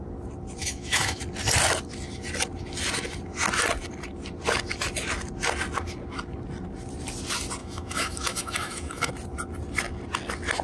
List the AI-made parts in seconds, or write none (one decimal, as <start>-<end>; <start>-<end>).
0.6-1.2; 7.6-9.1